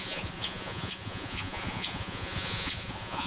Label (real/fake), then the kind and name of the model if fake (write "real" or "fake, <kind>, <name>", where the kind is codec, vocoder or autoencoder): fake, vocoder, Vocos